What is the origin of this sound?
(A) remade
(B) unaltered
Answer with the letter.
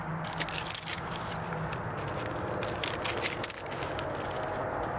B